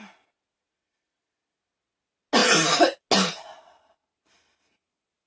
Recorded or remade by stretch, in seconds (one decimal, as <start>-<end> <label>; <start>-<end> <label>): 0.0-5.3 recorded